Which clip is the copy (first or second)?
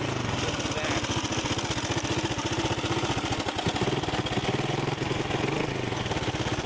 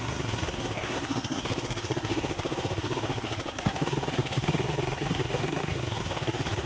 second